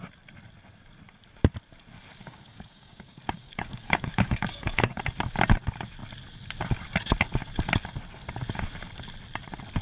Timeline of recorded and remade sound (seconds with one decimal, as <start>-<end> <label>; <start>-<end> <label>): 0.0-2.2 recorded; 2.2-5.0 remade; 5.0-9.8 recorded